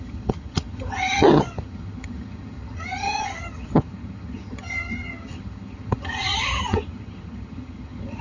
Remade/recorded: remade